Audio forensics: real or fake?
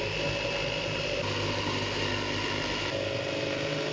real